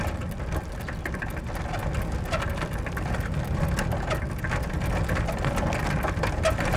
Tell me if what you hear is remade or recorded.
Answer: recorded